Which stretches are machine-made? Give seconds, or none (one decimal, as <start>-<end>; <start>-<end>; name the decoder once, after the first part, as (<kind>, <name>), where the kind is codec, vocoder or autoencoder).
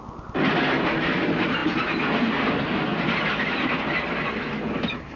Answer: none